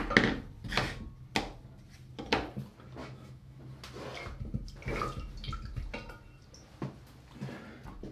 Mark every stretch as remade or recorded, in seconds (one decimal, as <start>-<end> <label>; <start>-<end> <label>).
0.0-3.0 recorded; 3.0-3.6 remade; 3.6-8.1 recorded